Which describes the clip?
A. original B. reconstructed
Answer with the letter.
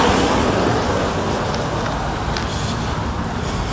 A